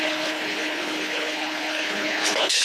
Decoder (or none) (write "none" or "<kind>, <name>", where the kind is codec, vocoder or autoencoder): codec, HILCodec